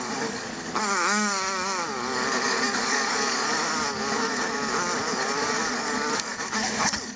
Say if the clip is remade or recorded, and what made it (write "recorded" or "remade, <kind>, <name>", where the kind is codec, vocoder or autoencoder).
remade, codec, DAC